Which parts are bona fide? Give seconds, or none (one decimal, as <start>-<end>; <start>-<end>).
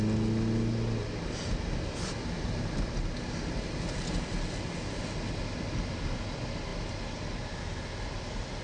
0.0-8.6